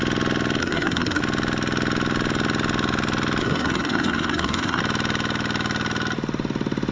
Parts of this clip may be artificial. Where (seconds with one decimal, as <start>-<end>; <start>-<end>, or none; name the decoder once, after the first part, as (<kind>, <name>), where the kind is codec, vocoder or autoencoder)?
0.6-1.2 (codec, SNAC); 3.4-4.8